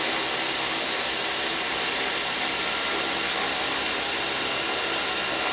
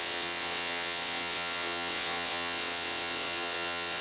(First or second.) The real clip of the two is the first